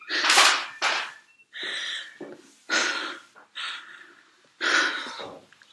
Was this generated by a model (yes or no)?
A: no